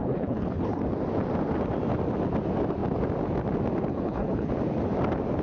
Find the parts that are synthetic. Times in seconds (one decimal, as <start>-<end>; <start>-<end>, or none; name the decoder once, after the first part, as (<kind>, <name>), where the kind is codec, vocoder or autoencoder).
0.0-0.8 (codec, HILCodec); 3.9-4.5